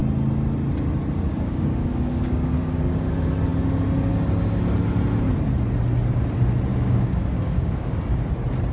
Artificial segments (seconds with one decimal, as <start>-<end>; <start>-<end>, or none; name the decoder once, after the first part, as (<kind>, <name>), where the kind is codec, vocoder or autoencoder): 1.3-3.1 (codec, DAC); 6.7-8.2